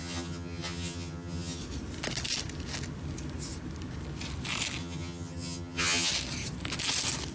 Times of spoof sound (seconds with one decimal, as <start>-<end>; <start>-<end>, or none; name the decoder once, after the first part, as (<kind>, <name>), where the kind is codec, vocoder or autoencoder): 0.0-1.6 (vocoder, HiFi-GAN); 4.8-6.1